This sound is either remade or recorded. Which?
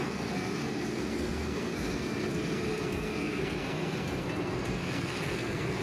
remade